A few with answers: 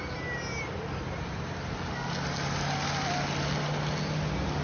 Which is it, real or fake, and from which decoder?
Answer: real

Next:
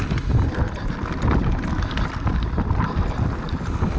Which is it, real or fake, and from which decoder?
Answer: real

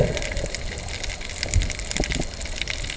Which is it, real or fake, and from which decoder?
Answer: real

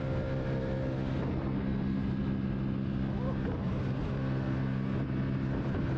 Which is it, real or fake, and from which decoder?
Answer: real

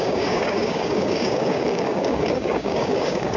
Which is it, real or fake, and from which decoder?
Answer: fake, codec, DAC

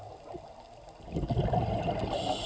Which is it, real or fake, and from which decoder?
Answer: real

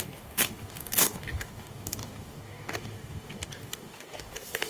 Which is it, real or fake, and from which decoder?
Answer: fake, codec, DAC